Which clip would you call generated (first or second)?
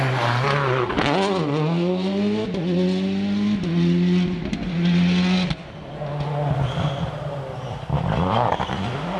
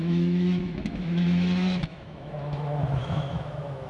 second